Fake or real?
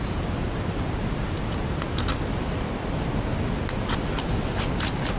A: real